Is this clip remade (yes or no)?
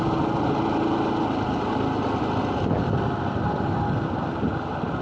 no